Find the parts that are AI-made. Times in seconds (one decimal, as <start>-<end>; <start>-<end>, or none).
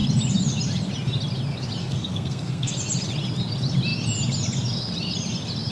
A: 1.8-2.7